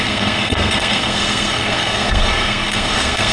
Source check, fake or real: fake